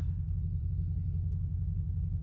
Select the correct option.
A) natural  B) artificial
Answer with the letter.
A